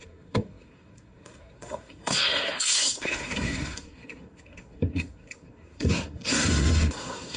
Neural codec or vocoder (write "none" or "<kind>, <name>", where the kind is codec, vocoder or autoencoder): codec, SNAC